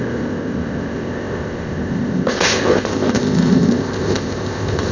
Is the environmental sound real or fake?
fake